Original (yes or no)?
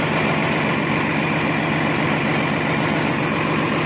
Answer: yes